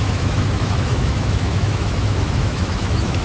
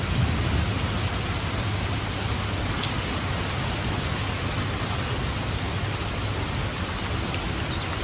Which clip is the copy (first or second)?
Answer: first